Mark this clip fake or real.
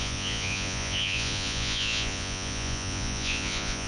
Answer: fake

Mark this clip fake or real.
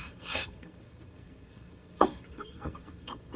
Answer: fake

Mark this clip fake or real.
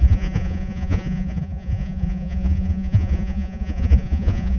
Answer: fake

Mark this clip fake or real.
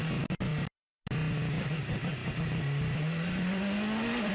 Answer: real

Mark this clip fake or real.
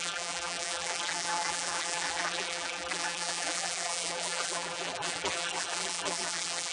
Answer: fake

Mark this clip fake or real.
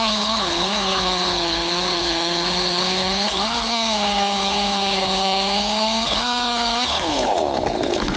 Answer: fake